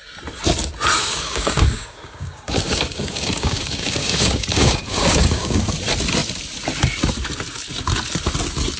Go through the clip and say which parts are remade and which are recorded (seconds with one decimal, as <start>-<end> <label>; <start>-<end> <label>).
0.0-1.0 recorded; 1.0-5.6 remade; 5.6-8.8 recorded